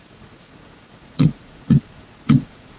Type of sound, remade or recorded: remade